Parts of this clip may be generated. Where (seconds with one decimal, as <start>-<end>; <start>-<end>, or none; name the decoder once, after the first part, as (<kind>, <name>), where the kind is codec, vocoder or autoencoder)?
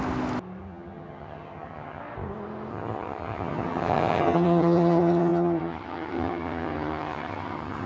0.6-2.0 (vocoder, HiFi-GAN); 2.7-7.9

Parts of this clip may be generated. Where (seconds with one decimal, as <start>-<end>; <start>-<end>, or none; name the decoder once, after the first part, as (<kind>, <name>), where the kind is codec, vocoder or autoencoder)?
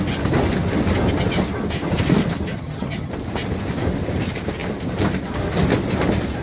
2.5-3.1 (vocoder, HiFi-GAN)